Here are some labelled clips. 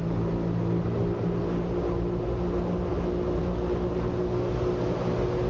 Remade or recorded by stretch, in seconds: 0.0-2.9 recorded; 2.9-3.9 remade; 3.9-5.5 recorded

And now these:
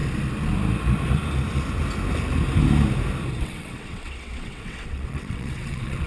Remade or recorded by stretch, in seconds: 0.0-3.4 recorded; 3.4-6.1 remade

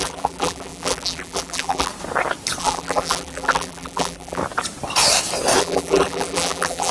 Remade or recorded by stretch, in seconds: 0.0-1.9 remade; 1.9-2.6 recorded; 2.6-4.4 remade; 4.4-5.6 recorded; 5.6-6.9 remade

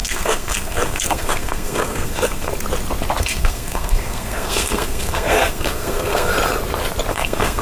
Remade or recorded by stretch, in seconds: 0.0-2.5 remade; 2.5-3.2 recorded; 3.2-6.3 remade; 6.3-7.1 recorded; 7.1-7.6 remade

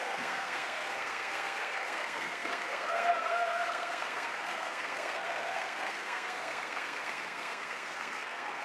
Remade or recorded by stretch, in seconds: 0.0-8.6 remade

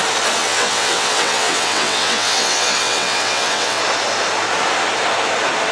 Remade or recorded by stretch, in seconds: 0.0-0.4 recorded; 0.4-3.8 remade; 3.8-5.7 recorded